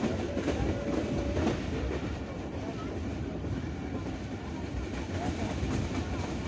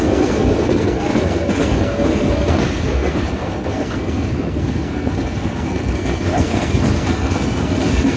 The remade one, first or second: second